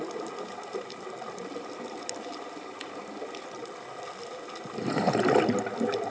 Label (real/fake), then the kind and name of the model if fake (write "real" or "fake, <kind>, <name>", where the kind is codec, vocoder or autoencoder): real